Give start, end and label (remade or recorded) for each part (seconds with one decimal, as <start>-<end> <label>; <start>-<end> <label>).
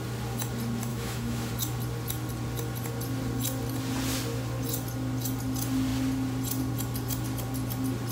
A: 0.0-0.9 recorded; 0.9-1.5 remade; 1.5-8.1 recorded